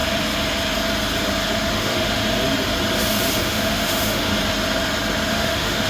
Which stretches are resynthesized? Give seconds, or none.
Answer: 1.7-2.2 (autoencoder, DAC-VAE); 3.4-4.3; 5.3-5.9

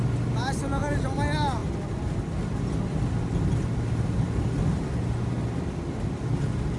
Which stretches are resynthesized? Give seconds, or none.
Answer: none